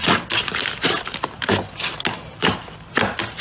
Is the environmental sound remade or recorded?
recorded